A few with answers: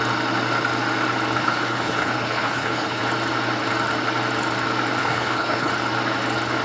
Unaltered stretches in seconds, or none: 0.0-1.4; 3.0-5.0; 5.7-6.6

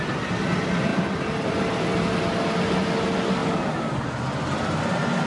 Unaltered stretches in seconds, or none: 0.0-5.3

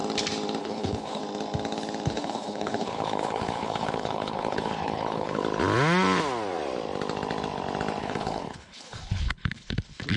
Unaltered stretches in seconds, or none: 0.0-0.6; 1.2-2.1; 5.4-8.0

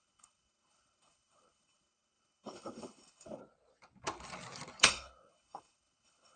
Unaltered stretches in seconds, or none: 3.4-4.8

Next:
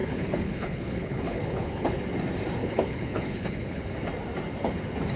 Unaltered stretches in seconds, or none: 2.0-2.6; 3.9-5.2

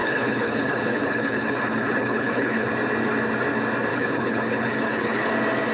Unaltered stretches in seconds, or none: 2.7-3.9; 5.3-5.7